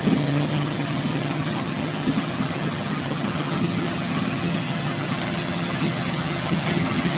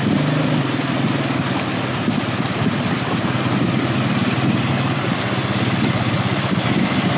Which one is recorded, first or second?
second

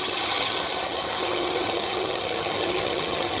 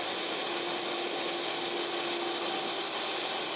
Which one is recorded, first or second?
second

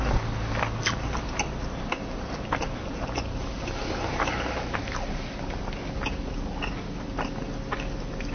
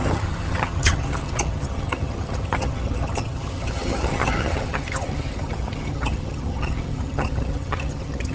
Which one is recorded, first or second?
first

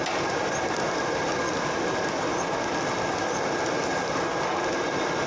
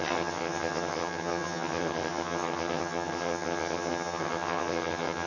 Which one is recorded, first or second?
first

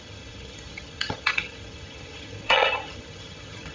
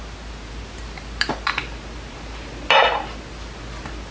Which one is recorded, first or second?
second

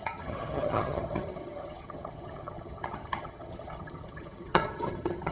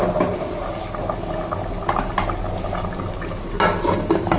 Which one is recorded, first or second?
second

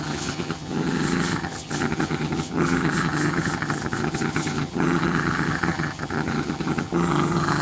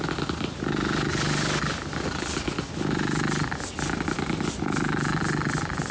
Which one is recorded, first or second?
second